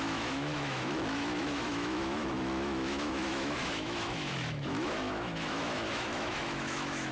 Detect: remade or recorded remade